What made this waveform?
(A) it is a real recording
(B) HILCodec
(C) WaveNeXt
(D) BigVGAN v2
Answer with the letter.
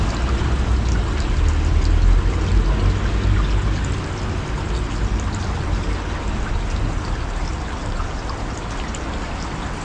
A